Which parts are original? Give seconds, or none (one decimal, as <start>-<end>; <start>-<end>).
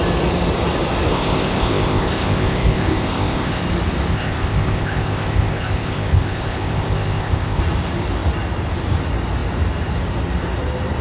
0.0-1.1; 3.6-4.1; 7.6-11.0